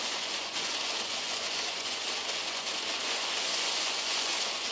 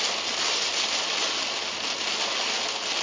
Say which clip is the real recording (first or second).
second